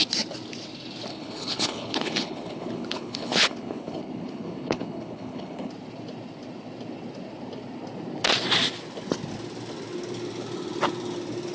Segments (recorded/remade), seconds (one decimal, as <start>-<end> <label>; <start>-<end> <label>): 0.0-1.1 recorded; 1.1-5.7 remade; 5.7-11.5 recorded